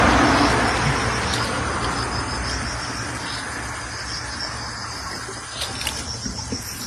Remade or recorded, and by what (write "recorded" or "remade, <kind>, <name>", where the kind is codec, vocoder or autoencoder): recorded